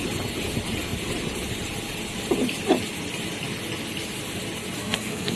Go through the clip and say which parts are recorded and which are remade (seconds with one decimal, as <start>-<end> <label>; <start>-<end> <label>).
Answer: 0.0-4.8 recorded; 4.8-5.4 remade